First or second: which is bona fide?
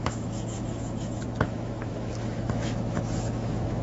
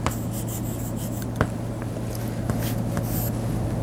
second